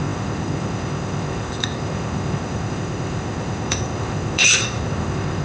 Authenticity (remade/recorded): remade